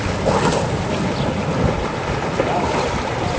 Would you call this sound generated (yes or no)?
no